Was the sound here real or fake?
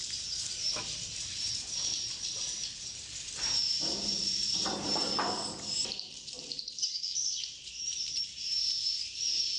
fake